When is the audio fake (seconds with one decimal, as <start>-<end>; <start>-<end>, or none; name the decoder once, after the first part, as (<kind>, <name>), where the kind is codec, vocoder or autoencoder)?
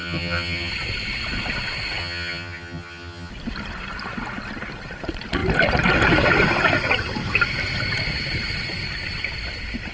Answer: 0.0-0.7 (vocoder, HiFi-GAN); 2.0-3.3